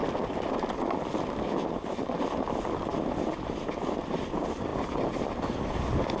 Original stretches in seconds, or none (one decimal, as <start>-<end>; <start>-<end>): 0.0-6.2